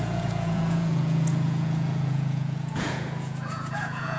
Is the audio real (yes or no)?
no